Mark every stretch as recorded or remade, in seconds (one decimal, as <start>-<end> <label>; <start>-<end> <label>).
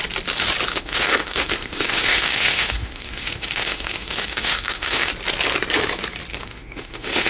0.0-0.7 recorded; 0.7-5.1 remade; 5.1-6.3 recorded; 6.3-7.3 remade